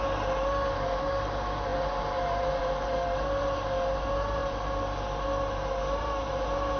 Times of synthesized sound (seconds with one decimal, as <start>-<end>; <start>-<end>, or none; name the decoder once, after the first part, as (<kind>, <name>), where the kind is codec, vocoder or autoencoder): 0.0-4.4 (vocoder, BigVGAN v2); 6.0-6.8

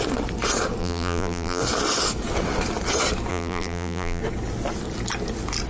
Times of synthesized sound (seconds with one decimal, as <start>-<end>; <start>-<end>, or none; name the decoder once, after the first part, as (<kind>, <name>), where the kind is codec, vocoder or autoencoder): 0.8-1.6 (vocoder, BigVGAN v2); 3.3-4.2